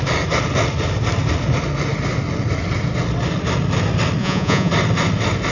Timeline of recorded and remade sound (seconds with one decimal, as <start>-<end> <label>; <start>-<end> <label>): 0.0-4.2 recorded; 4.2-4.7 remade; 4.7-5.5 recorded